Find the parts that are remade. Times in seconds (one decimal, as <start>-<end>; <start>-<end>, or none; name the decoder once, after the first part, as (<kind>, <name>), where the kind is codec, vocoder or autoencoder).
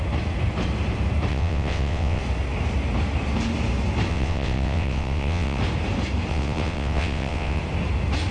1.3-2.2 (vocoder, WaveNeXt); 4.1-5.6; 6.3-7.6